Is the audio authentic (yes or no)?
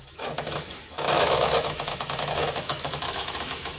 no